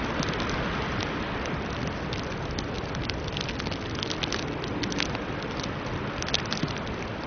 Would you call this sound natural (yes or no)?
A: yes